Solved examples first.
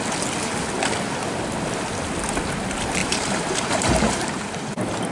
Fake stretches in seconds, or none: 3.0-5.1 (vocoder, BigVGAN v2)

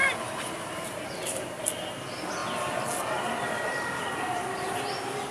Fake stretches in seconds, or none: 0.0-1.6 (vocoder, BigVGAN v2)

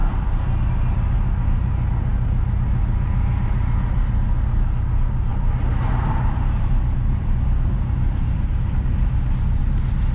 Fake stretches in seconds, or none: 0.0-0.7 (vocoder, BigVGAN v2); 5.3-9.6

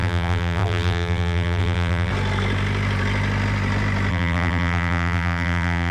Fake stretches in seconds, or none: 0.0-2.1 (vocoder, BigVGAN v2); 4.1-5.9